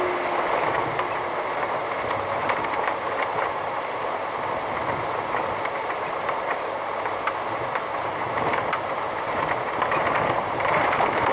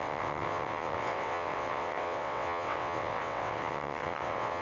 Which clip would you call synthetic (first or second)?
second